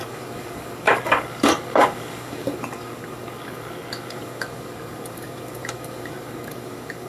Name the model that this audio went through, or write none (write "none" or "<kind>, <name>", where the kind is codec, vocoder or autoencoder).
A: codec, DAC